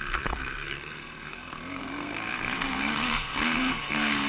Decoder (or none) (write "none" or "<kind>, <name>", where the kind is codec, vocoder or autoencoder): codec, SNAC